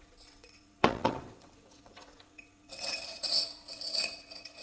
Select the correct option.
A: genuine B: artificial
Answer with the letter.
B